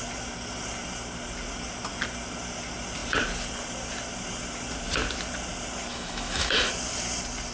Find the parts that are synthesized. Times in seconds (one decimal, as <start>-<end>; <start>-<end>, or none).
5.9-6.7

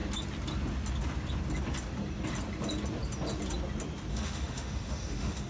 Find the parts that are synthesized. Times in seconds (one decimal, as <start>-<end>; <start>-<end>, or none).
4.1-5.5

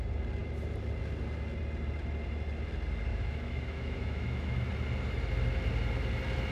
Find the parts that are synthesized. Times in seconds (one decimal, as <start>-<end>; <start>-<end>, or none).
3.1-4.7

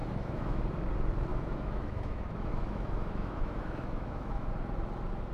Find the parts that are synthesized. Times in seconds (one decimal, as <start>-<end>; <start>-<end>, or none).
0.0-0.6; 1.3-4.5